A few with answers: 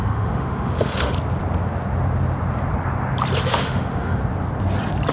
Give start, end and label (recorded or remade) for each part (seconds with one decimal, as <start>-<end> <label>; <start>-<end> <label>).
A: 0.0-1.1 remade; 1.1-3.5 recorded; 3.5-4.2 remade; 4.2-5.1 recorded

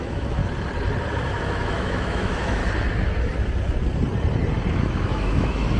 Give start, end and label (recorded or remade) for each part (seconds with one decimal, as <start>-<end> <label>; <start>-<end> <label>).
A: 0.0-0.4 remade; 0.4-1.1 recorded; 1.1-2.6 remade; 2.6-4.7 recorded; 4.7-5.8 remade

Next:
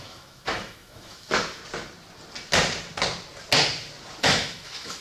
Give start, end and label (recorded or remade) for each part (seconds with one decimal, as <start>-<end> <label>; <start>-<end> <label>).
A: 0.0-1.6 remade; 1.6-4.2 recorded; 4.2-5.0 remade

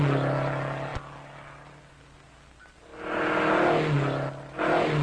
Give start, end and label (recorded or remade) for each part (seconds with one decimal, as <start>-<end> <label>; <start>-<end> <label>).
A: 0.0-5.0 recorded